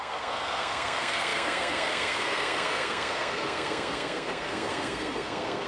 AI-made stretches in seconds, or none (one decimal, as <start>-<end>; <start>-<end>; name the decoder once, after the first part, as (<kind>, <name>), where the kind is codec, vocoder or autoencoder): 0.0-5.7 (codec, SNAC)